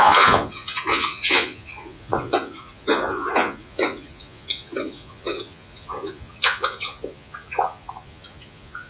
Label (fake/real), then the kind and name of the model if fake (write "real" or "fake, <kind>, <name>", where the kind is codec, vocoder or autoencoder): fake, vocoder, Vocos